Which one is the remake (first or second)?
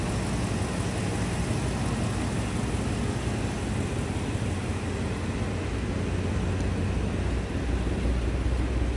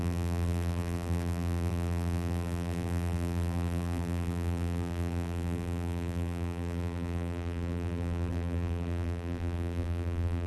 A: second